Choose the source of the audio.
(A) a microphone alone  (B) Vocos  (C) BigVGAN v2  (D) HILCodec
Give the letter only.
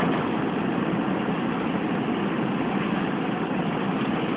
A